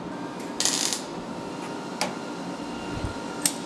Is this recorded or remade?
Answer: recorded